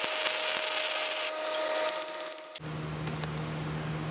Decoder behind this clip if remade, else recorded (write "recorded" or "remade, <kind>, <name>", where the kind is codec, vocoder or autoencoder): recorded